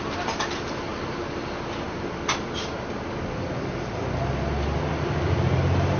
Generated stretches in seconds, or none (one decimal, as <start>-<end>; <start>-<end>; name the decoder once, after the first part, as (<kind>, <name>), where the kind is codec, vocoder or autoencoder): none